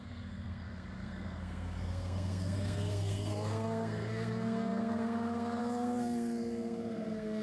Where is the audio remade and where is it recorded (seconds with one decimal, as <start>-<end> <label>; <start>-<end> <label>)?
0.0-7.4 remade